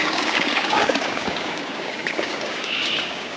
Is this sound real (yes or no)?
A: no